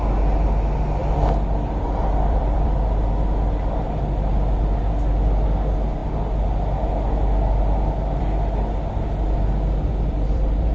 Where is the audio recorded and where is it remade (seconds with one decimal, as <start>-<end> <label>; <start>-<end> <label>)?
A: 0.0-1.0 recorded; 1.0-2.7 remade; 2.7-9.9 recorded; 9.9-10.7 remade